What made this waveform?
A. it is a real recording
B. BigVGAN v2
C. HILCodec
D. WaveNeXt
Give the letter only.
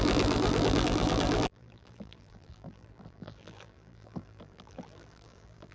B